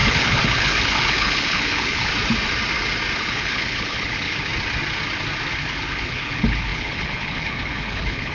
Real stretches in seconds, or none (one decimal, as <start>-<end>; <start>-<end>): 2.1-3.2; 4.5-5.5